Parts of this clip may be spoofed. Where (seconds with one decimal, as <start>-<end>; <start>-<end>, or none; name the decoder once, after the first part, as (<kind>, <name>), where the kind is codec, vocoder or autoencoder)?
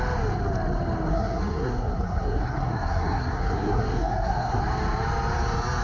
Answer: 1.1-4.6 (codec, SNAC)